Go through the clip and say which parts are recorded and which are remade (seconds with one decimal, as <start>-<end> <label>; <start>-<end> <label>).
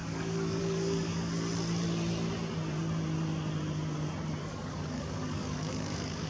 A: 0.0-1.3 remade; 1.3-4.4 recorded; 4.4-6.3 remade